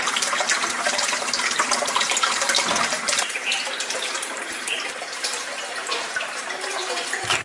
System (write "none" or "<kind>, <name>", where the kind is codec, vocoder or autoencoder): vocoder, BigVGAN v2